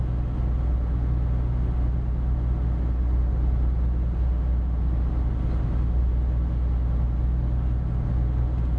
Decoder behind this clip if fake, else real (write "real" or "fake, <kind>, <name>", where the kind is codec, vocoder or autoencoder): real